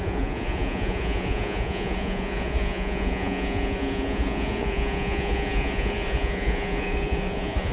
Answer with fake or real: fake